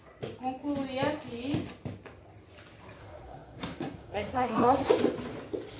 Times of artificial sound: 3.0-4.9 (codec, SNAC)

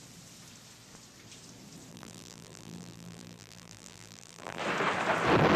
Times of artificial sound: 1.9-4.6 (vocoder, BigVGAN v2)

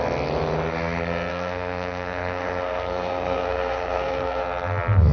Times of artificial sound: 1.3-4.4 (codec, SNAC)

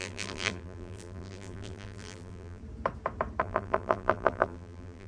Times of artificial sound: 0.0-2.6 (vocoder, BigVGAN v2); 3.4-5.1

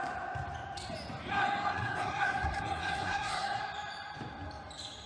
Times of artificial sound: 1.3-3.6 (codec, SNAC)

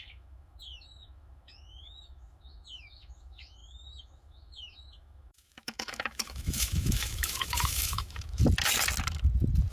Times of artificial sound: 0.0-8.4 (autoencoder, DAC-VAE)

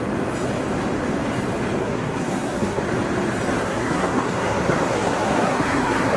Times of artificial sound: 1.8-2.8 (codec, SNAC); 3.6-6.2